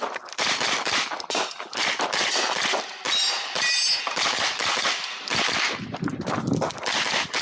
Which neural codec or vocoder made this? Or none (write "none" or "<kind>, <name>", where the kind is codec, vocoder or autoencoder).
vocoder, BigVGAN v2